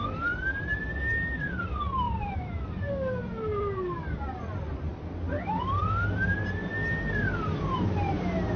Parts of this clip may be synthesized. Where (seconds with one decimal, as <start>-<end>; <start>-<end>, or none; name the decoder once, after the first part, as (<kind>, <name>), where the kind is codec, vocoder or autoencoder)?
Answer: none